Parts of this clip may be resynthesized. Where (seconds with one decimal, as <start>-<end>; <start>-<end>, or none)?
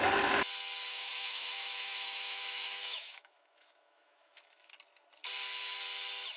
0.9-4.7